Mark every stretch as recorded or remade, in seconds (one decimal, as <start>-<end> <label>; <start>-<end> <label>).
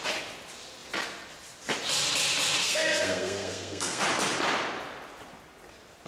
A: 0.0-2.6 recorded; 2.6-4.0 remade; 4.0-6.1 recorded